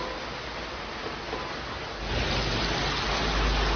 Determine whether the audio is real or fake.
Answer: real